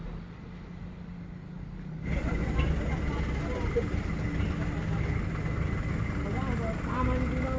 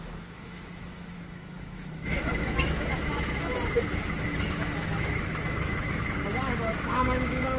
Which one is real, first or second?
first